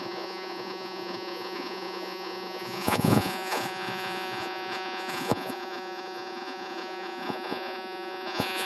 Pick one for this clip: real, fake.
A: fake